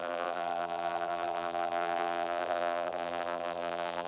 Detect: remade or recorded remade